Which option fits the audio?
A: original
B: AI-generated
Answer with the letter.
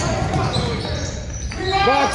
A